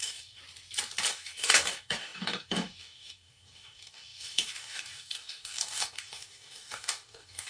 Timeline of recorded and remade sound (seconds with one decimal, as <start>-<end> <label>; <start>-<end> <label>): 0.0-0.4 remade; 0.4-1.1 recorded; 1.1-7.5 remade